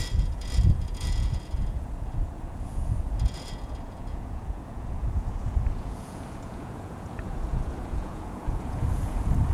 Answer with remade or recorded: remade